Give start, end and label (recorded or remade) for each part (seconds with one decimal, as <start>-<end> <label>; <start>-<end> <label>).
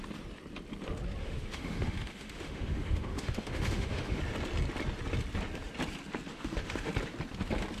0.0-1.2 recorded; 1.2-4.2 remade; 4.2-6.3 recorded; 6.3-6.9 remade; 6.9-7.8 recorded